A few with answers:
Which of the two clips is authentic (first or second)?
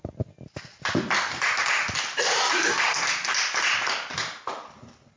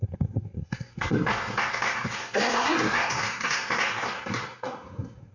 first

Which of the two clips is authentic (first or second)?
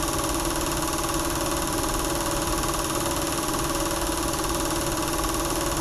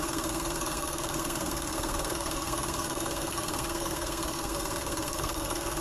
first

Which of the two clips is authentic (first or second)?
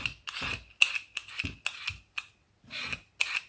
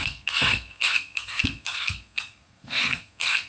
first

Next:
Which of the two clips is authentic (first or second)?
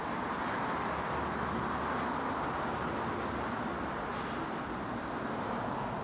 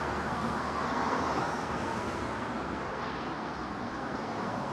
first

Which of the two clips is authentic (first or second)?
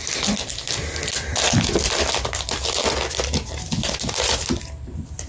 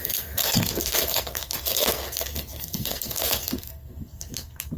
first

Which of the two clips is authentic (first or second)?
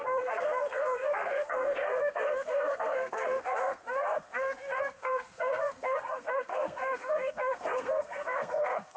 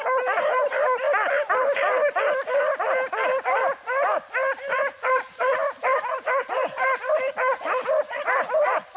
second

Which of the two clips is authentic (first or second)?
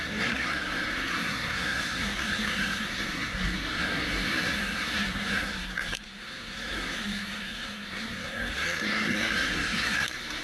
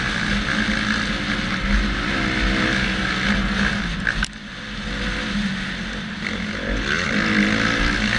second